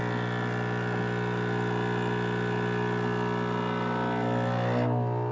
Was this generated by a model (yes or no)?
no